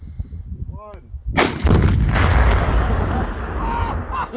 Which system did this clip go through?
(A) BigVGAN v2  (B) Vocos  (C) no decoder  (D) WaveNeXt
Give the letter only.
C